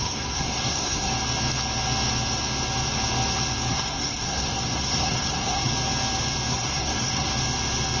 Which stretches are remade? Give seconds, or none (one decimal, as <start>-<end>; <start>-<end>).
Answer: 0.0-1.1; 3.7-5.7; 6.5-7.3